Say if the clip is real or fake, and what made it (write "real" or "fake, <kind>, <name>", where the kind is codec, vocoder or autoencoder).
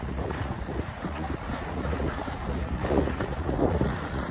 fake, vocoder, Vocos